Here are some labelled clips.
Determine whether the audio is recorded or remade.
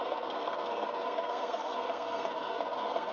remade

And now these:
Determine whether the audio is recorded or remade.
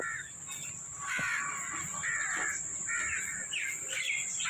recorded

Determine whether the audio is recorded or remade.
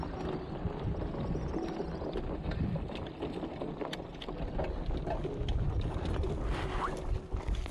recorded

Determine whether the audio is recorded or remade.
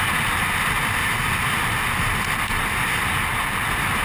recorded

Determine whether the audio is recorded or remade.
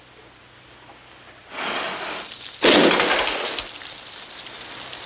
recorded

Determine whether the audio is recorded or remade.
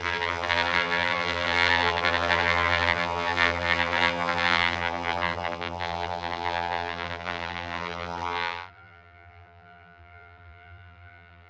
remade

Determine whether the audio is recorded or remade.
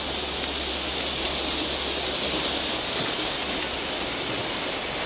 recorded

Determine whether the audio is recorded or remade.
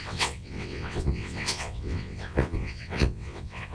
remade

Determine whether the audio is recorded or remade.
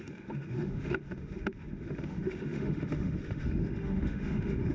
remade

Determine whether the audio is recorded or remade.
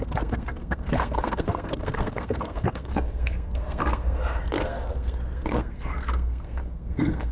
remade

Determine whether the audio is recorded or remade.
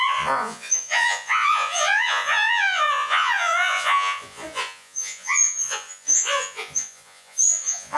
remade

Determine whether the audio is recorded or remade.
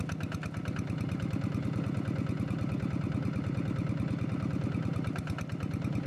recorded